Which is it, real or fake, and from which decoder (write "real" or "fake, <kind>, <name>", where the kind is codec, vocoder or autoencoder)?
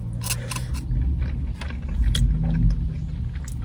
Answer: real